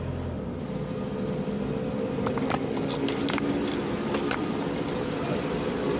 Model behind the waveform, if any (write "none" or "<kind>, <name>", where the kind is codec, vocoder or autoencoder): none